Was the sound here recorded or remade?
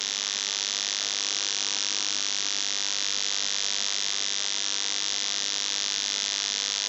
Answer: recorded